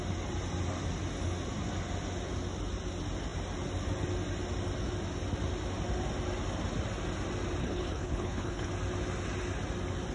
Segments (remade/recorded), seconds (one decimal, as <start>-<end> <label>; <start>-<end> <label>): 0.0-7.6 recorded; 7.6-8.7 remade; 8.7-10.1 recorded